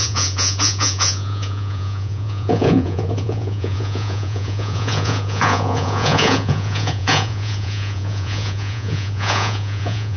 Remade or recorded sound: remade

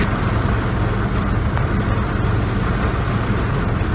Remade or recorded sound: recorded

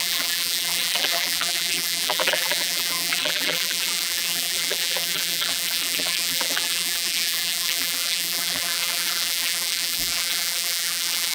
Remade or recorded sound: remade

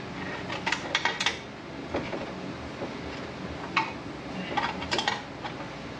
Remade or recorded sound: recorded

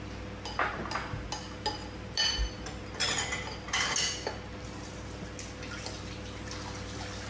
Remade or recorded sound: recorded